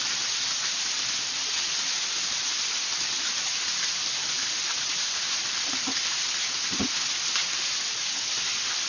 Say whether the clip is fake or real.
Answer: real